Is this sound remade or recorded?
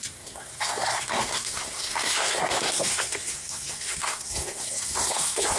remade